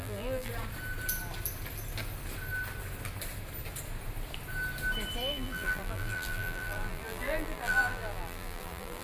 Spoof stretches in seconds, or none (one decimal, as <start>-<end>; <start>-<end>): 0.0-0.5; 5.2-9.0